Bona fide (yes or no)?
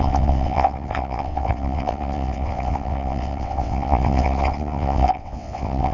no